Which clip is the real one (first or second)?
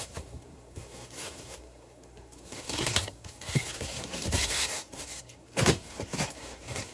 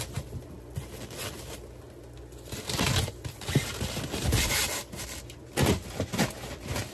second